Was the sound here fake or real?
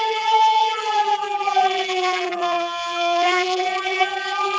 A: fake